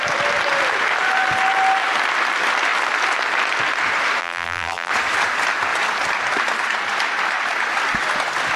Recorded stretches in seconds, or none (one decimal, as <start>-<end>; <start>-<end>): 0.0-4.2; 4.9-8.6